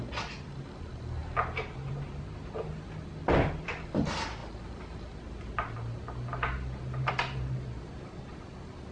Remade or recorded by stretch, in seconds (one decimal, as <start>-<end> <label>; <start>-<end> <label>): 0.0-1.2 recorded; 1.2-1.9 remade; 1.9-3.2 recorded; 3.2-3.8 remade; 3.8-8.9 recorded